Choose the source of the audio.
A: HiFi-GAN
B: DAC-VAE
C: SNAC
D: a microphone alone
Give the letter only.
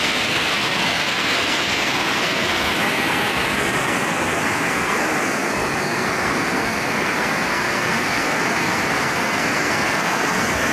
C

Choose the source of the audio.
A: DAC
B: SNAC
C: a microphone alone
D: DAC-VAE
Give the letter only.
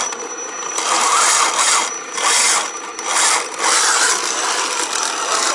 C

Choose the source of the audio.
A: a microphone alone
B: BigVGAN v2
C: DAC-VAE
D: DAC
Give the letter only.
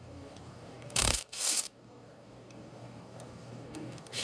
D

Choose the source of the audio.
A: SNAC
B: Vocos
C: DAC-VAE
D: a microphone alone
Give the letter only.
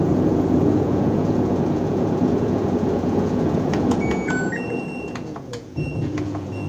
B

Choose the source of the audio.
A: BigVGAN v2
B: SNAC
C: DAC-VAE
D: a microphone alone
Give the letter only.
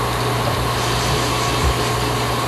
D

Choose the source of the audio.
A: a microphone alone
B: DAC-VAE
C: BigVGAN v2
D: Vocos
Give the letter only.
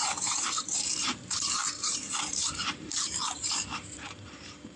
C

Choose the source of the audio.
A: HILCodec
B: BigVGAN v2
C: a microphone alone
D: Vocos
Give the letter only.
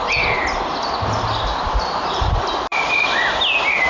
C